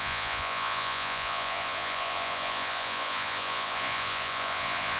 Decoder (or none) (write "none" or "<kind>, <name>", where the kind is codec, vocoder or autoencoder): vocoder, Vocos